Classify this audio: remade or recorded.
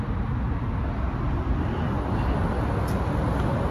recorded